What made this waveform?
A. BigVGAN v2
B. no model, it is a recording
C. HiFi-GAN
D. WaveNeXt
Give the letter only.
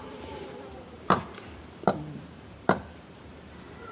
A